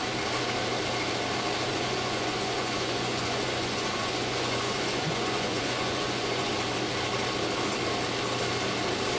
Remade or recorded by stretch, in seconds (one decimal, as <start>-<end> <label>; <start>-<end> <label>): 0.0-1.7 recorded; 1.7-6.5 remade; 6.5-9.2 recorded

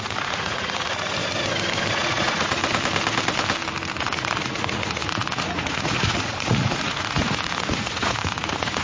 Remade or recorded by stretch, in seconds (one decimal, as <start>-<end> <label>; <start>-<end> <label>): 0.0-1.2 remade; 1.2-1.9 recorded; 1.9-2.6 remade; 2.6-4.0 recorded; 4.0-8.8 remade

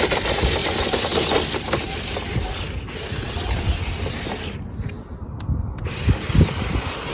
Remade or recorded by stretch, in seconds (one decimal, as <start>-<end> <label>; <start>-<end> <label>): 0.0-7.1 recorded

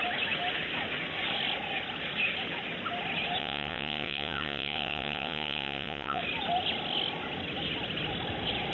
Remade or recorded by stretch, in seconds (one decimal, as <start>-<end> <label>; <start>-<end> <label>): 0.0-3.4 recorded; 3.4-6.2 remade; 6.2-8.7 recorded